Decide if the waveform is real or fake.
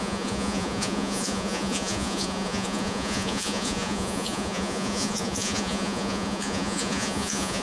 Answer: fake